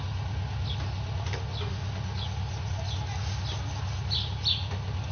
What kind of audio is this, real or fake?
real